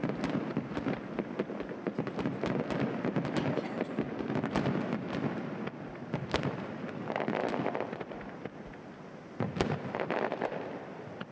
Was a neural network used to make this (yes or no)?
no